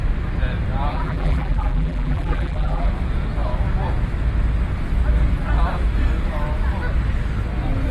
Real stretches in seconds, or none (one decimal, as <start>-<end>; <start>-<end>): 0.0-0.9; 2.9-7.9